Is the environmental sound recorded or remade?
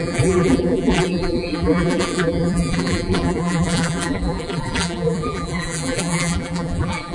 remade